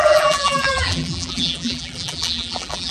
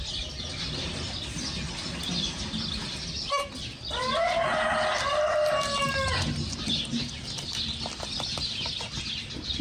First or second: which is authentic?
second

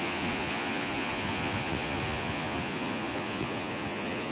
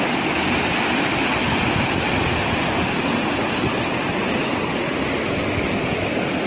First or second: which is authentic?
second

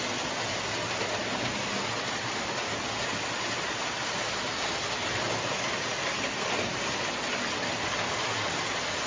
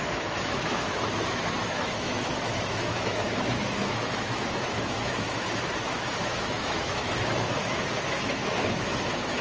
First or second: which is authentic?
first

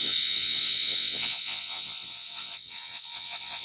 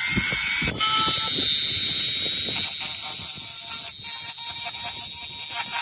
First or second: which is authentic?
second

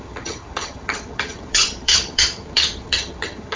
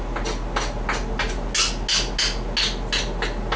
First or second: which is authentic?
second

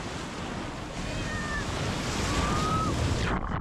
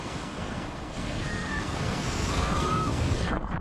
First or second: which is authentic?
first